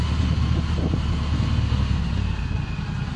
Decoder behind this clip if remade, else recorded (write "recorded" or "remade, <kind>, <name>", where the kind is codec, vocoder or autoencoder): recorded